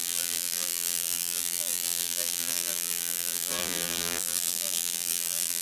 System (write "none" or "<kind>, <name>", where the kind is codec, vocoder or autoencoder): vocoder, BigVGAN v2